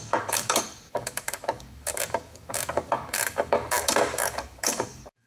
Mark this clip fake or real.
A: fake